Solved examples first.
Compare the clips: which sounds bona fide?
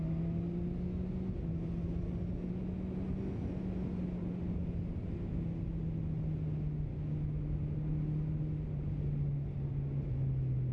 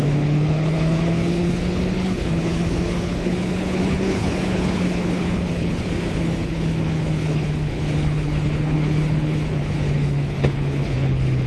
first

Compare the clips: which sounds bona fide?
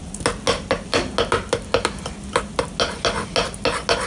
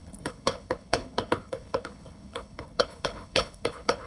first